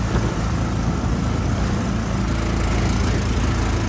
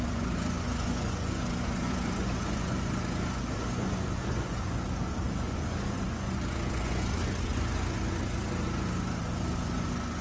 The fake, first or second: second